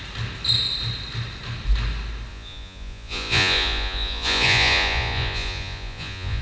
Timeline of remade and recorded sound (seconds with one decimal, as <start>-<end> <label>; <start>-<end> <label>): 0.0-2.3 recorded; 2.3-6.4 remade